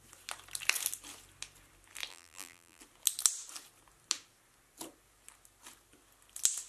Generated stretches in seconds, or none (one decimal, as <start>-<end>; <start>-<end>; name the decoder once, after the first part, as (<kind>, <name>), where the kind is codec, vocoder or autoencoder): 2.1-2.8 (vocoder, BigVGAN v2)